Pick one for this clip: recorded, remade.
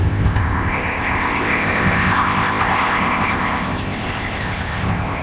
remade